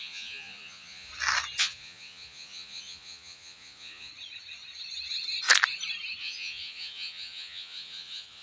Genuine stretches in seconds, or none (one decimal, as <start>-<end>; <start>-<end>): 1.1-1.6; 4.1-6.2